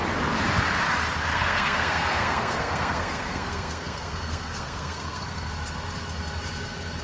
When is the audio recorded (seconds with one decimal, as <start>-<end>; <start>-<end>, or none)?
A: 0.0-1.3; 5.5-7.0